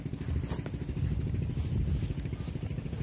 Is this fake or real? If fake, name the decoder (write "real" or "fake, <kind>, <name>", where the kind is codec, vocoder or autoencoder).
real